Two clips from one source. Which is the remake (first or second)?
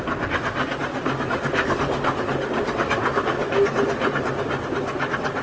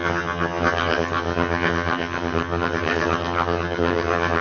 second